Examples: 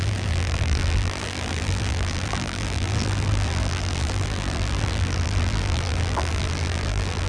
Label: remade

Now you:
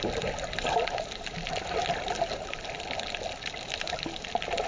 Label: recorded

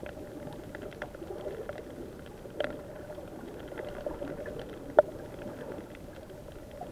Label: recorded